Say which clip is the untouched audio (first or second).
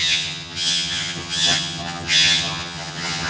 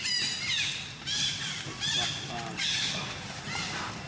second